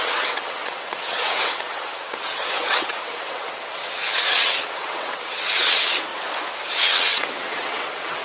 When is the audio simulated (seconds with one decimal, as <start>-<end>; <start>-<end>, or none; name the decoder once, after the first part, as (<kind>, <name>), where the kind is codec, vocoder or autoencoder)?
0.0-6.1 (vocoder, WaveNeXt); 6.7-8.2